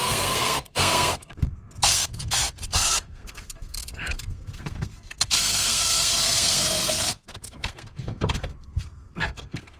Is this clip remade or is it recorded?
remade